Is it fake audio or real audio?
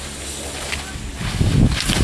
real